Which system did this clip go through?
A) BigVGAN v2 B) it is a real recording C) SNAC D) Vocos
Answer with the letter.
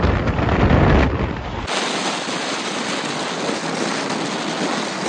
B